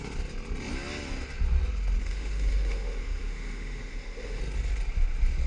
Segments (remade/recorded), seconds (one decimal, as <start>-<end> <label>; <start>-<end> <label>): 0.0-2.0 recorded; 2.0-4.4 remade; 4.4-5.5 recorded